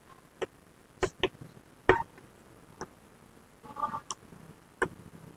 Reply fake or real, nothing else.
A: real